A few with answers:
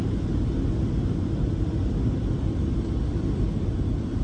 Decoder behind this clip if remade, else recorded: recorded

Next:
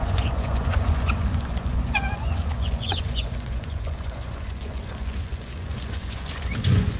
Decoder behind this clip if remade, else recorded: remade, vocoder, Vocos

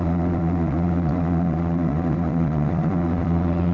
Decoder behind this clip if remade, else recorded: remade, vocoder, Vocos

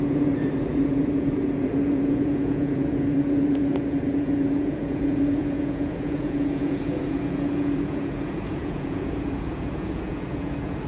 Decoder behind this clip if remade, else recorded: remade, vocoder, Vocos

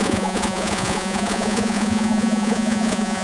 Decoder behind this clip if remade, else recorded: remade, vocoder, Vocos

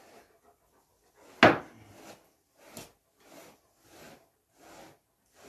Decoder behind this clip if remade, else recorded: recorded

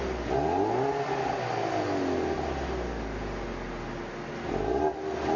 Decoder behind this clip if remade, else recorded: recorded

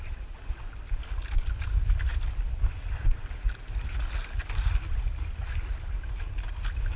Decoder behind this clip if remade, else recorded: recorded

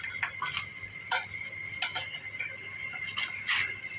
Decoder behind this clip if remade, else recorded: recorded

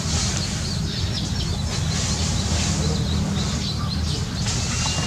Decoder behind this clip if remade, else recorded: recorded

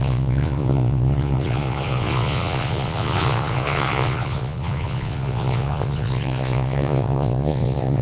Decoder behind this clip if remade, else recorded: remade, vocoder, Vocos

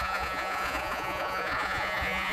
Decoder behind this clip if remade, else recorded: remade, vocoder, Vocos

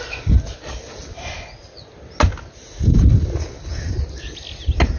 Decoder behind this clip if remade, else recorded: recorded